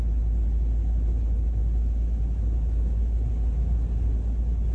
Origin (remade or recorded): recorded